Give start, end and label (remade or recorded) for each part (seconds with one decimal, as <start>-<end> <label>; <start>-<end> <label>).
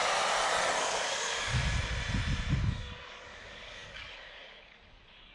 0.0-0.8 recorded; 0.8-1.6 remade; 1.6-2.7 recorded; 2.7-5.3 remade